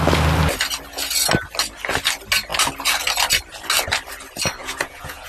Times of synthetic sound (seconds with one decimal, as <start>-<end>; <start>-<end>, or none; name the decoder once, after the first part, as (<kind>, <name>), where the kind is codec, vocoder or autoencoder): 4.6-5.3 (vocoder, Vocos)